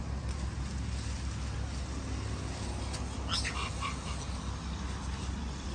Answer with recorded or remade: recorded